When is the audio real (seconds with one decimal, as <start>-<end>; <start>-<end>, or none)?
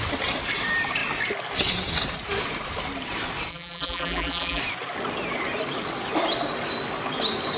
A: 0.0-3.5; 4.6-7.6